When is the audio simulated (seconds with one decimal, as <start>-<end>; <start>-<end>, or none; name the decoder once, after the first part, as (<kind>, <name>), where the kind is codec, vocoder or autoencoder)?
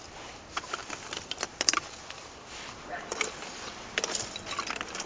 0.8-3.9 (vocoder, BigVGAN v2)